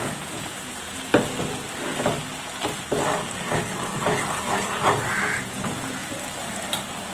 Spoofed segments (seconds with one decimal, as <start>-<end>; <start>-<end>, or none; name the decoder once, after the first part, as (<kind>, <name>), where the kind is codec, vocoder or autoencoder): 0.0-1.1 (vocoder, Vocos); 5.4-6.0